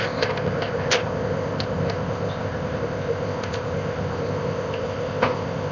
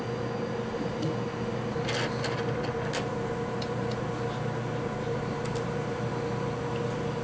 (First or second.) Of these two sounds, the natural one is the second